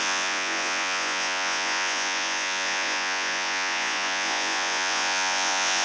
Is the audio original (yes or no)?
no